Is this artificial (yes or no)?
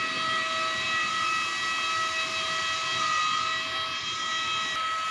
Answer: no